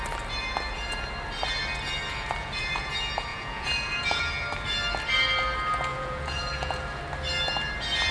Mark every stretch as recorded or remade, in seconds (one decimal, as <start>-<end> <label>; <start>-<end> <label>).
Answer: 0.0-2.4 recorded; 2.4-2.9 remade; 2.9-3.3 recorded; 3.3-4.2 remade; 4.2-5.9 recorded; 5.9-7.0 remade; 7.0-8.1 recorded